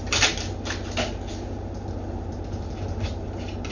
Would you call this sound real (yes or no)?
yes